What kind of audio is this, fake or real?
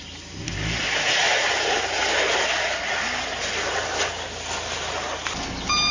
real